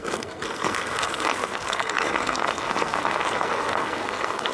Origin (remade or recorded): remade